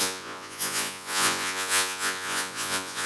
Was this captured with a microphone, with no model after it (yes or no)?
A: no